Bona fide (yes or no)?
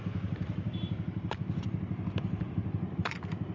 no